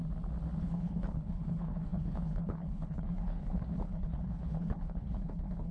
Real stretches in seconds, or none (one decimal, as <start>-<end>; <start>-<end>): 0.0-0.6